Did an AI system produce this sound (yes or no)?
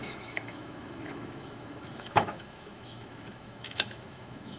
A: yes